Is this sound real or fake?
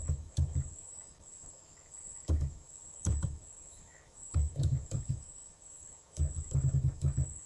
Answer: fake